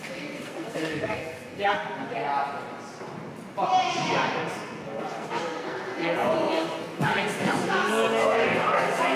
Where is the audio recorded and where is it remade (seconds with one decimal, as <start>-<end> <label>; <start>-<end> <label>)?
0.0-2.2 remade; 2.2-4.4 recorded; 4.4-9.2 remade